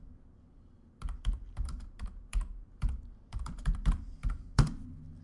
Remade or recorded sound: remade